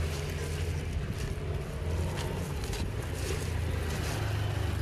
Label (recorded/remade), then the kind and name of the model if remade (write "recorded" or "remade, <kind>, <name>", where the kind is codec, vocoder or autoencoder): recorded